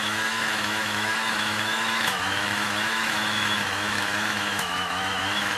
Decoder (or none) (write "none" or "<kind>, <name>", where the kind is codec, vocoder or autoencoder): autoencoder, DAC-VAE